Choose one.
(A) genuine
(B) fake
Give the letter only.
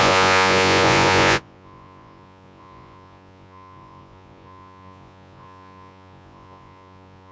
B